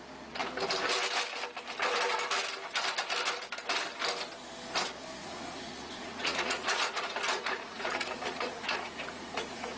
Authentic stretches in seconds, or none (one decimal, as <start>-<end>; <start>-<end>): 0.0-5.2